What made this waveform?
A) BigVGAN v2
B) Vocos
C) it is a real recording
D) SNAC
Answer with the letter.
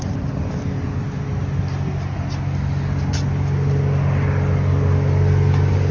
C